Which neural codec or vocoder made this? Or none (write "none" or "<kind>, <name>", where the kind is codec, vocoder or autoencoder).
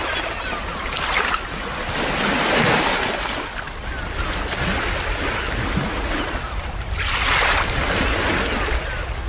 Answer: none